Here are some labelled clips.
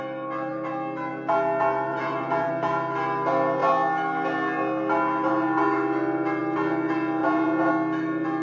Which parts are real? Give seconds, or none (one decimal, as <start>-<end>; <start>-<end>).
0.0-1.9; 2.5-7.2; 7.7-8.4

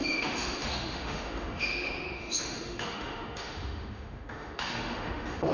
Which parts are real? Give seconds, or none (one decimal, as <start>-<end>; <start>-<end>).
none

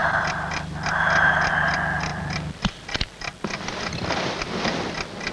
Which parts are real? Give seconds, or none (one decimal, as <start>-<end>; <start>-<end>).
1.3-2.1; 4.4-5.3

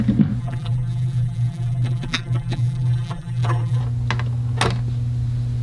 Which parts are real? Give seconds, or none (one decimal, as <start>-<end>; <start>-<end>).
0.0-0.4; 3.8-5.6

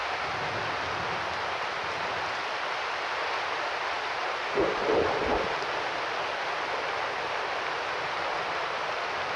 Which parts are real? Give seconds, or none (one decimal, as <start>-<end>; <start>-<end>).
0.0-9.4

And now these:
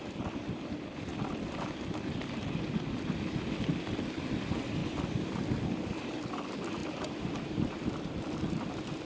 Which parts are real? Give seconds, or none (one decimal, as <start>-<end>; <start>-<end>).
1.1-2.1